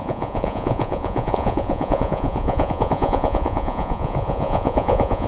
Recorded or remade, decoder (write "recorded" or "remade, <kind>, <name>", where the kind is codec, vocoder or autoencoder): remade, vocoder, Vocos